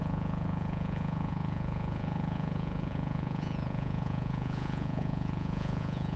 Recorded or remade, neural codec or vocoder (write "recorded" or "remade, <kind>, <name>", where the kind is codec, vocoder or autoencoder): remade, vocoder, Vocos